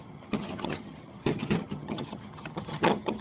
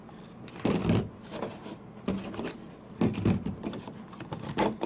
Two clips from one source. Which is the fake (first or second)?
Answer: first